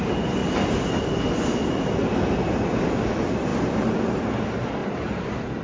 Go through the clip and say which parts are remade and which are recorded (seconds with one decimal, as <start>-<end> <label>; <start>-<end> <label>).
0.0-3.5 recorded; 3.5-4.2 remade; 4.2-5.6 recorded